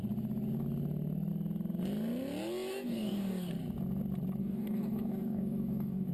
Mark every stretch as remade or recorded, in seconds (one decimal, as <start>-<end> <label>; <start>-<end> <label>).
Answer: 0.0-2.7 recorded; 2.7-3.5 remade; 3.5-4.4 recorded; 4.4-6.1 remade